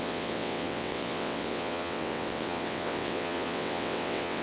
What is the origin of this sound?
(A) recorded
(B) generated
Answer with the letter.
B